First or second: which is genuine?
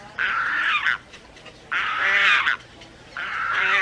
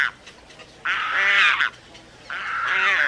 second